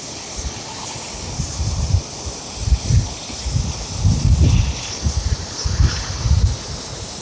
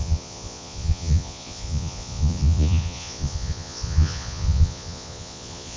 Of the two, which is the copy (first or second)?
second